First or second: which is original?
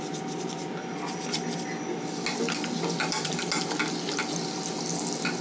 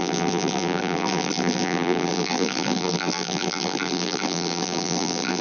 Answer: first